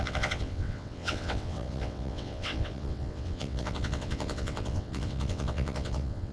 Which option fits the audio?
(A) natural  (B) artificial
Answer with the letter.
B